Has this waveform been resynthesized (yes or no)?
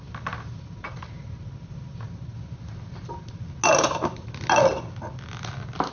no